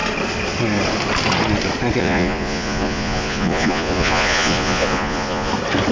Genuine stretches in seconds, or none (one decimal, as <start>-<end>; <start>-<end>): 0.0-2.0; 5.5-5.9